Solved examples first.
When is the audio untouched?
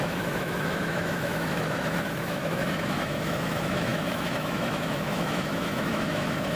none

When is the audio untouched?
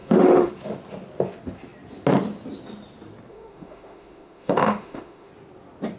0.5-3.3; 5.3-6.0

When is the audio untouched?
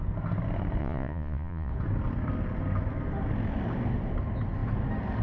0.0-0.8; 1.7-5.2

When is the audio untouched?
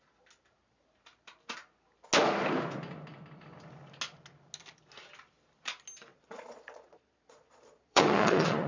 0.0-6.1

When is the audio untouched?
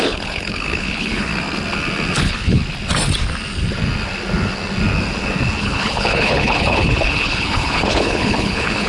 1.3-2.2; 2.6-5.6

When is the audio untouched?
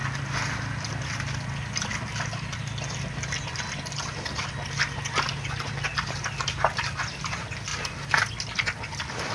0.0-9.3